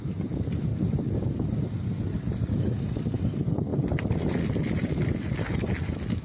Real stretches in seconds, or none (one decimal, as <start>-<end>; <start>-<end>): 0.0-6.2